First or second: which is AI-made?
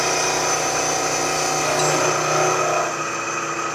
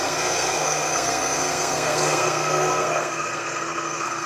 second